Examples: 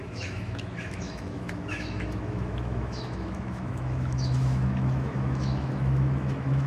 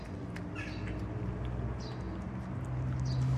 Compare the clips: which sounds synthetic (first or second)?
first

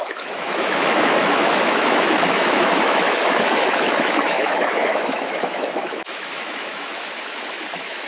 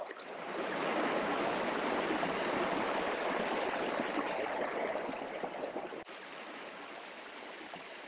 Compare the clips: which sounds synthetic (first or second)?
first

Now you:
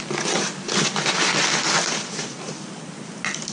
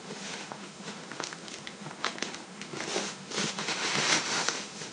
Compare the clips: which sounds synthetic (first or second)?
second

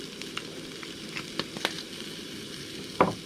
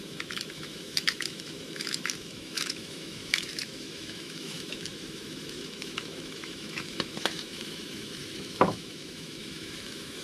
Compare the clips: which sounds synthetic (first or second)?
second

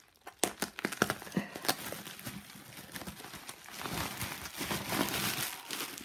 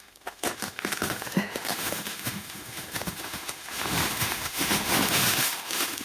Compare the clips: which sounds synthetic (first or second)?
second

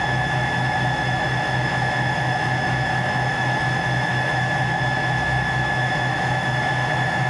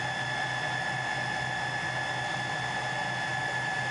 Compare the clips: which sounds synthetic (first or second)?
first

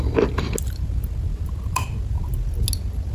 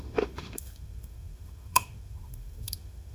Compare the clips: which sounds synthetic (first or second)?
second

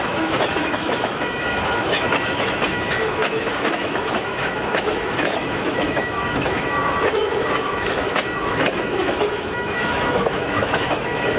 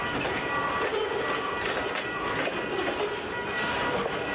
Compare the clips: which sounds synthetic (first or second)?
first